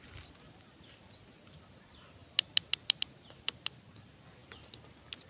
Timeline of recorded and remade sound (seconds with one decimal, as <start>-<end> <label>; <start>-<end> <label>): 0.0-5.3 recorded